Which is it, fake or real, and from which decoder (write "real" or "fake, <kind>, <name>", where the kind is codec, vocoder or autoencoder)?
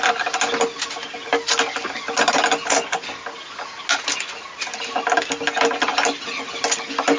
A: real